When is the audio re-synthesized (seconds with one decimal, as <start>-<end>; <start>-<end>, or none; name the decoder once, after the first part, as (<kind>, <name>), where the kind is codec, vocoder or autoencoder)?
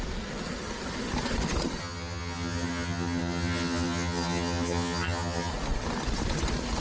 1.8-5.5 (vocoder, HiFi-GAN)